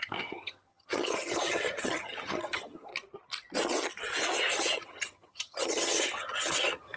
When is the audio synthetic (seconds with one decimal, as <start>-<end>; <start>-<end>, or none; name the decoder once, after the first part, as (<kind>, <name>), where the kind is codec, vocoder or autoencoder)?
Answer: 0.0-2.9 (vocoder, HiFi-GAN); 4.5-7.0

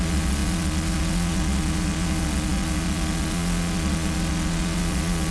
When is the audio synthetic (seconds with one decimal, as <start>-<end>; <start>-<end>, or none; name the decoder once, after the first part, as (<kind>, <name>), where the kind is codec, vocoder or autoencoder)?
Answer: 0.0-5.3 (vocoder, Vocos)

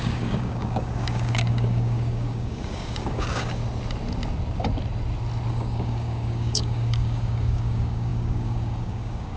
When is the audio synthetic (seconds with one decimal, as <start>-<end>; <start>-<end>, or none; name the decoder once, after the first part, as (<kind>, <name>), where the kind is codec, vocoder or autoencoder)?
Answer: 0.0-3.6 (codec, DAC); 5.5-9.4

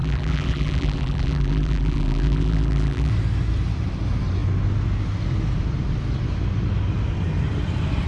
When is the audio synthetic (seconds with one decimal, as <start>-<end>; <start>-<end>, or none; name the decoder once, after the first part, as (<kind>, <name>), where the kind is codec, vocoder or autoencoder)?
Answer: 0.0-3.1 (vocoder, BigVGAN v2)

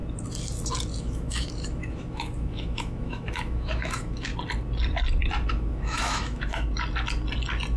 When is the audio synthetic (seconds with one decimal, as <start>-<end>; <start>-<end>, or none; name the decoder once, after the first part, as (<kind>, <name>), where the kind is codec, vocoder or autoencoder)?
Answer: 1.0-4.3 (autoencoder, DAC-VAE); 5.5-6.5

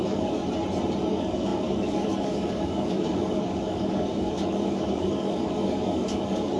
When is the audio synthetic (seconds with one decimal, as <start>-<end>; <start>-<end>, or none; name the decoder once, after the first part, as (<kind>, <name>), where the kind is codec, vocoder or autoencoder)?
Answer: 0.0-0.4 (codec, DAC); 1.1-6.6